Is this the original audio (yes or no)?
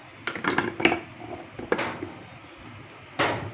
yes